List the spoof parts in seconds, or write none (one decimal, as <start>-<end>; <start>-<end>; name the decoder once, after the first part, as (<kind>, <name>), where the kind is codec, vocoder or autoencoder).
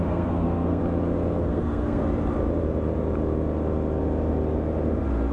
0.0-0.8 (codec, SNAC); 1.4-2.0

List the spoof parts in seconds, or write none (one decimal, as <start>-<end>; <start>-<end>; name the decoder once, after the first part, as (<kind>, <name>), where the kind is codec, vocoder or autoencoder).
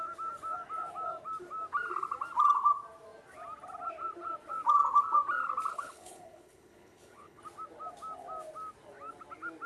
5.7-7.4 (codec, HILCodec)